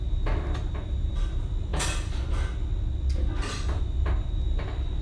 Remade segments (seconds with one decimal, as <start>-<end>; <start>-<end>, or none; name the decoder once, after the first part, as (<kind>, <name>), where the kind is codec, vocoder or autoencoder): none